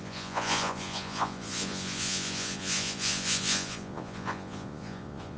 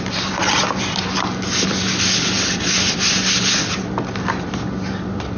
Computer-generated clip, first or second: first